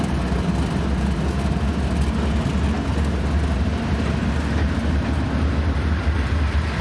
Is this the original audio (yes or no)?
yes